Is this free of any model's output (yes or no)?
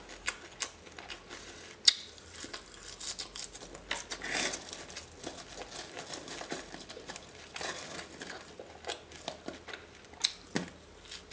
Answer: yes